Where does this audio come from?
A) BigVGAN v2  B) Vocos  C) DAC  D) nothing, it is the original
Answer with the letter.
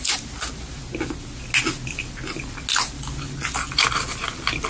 D